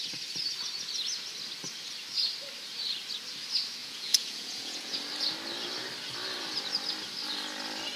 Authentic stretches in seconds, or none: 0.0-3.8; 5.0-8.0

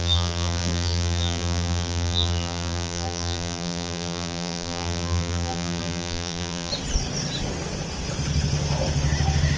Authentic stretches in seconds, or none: 6.7-9.6

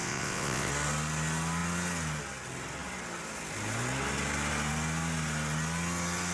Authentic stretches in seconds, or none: 0.7-6.3

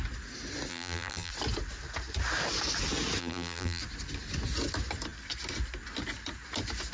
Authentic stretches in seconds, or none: 0.0-0.7; 1.3-3.2; 3.8-6.9

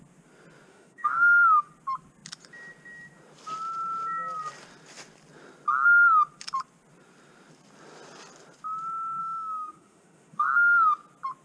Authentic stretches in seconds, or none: 0.0-0.7; 1.7-9.2; 10.5-11.4

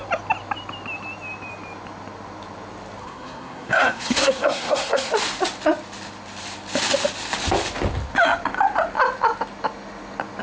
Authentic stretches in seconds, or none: 0.0-3.0; 5.1-10.4